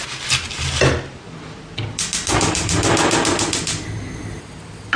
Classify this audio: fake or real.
real